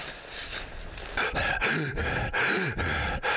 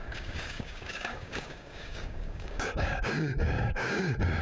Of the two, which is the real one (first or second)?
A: first